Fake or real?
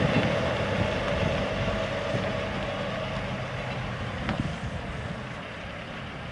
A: real